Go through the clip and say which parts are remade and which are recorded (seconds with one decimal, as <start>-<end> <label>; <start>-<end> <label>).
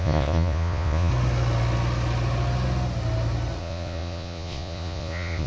0.0-1.1 remade; 1.1-3.6 recorded; 3.6-5.5 remade